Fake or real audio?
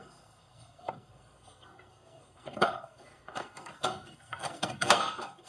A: fake